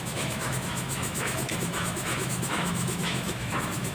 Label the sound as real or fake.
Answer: fake